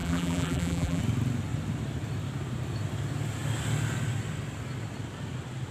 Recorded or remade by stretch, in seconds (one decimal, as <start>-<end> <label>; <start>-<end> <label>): 0.0-1.0 remade; 1.0-5.7 recorded